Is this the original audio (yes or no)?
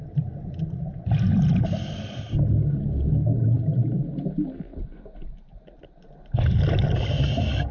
yes